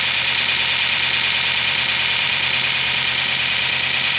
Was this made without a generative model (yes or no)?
no